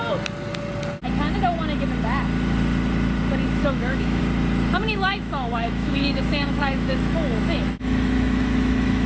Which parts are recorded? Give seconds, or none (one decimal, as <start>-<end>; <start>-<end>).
0.0-3.6; 4.2-4.8